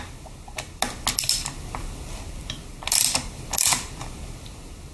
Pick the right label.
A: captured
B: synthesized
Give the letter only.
A